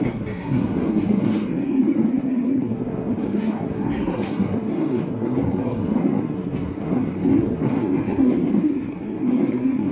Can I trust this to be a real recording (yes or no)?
no